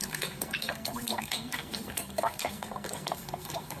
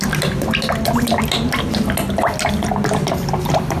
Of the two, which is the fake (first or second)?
first